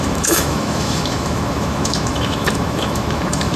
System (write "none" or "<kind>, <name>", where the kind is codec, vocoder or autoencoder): autoencoder, DAC-VAE